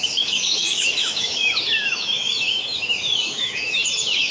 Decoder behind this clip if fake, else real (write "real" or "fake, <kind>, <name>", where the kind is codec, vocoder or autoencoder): fake, autoencoder, DAC-VAE